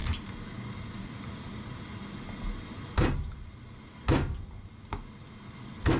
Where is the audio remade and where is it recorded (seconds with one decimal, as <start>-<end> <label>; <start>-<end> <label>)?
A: 0.0-6.0 recorded